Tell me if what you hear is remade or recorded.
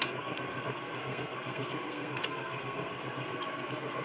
remade